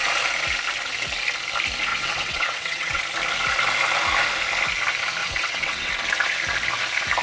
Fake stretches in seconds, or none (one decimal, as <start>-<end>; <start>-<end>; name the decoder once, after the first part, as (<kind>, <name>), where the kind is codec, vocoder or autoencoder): 1.9-3.0 (vocoder, WaveNeXt); 5.2-5.9